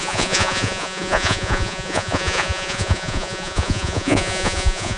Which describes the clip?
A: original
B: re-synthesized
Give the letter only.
B